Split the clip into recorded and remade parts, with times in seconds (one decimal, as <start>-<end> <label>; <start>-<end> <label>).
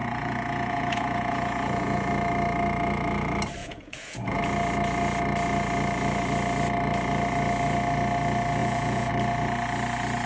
0.0-2.1 remade; 2.1-3.6 recorded; 3.6-4.4 remade; 4.4-8.6 recorded; 8.6-9.1 remade; 9.1-10.3 recorded